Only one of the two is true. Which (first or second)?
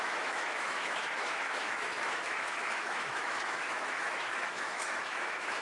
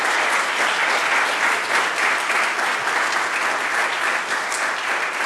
second